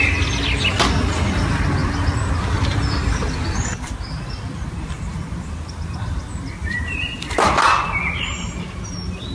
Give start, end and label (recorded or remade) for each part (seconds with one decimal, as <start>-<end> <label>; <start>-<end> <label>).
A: 0.0-3.7 recorded; 3.7-7.1 remade; 7.1-9.3 recorded